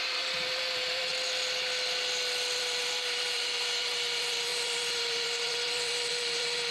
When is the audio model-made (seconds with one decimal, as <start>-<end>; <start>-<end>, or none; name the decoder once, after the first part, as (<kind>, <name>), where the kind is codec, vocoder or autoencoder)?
0.0-1.1 (vocoder, BigVGAN v2); 2.6-6.7